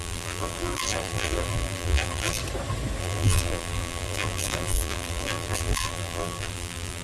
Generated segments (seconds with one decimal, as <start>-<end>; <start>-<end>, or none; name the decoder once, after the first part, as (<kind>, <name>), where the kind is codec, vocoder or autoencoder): 0.0-2.4 (vocoder, BigVGAN v2); 3.0-7.0

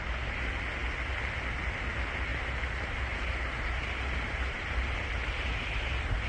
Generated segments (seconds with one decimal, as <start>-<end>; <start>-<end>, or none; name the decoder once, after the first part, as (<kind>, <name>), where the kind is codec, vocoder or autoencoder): 2.3-6.3 (vocoder, BigVGAN v2)

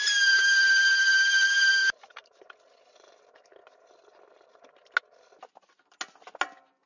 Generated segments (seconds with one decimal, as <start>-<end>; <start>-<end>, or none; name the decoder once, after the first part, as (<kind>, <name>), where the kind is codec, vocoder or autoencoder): 1.8-2.4 (vocoder, BigVGAN v2)

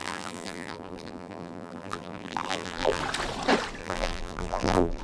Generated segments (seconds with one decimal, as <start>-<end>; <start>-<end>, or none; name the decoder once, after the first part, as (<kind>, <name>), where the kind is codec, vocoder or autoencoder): 0.0-3.0 (vocoder, BigVGAN v2); 3.8-5.0

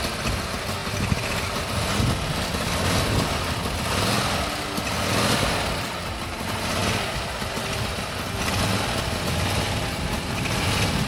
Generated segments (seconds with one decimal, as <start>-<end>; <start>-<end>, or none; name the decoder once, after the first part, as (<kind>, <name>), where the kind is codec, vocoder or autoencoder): none

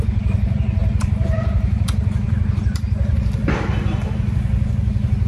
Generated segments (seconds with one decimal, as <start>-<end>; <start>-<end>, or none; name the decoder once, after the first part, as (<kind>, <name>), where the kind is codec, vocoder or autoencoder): 0.0-3.4 (vocoder, BigVGAN v2)